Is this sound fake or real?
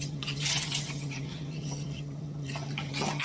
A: fake